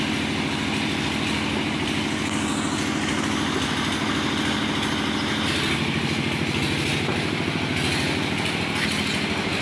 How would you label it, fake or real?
real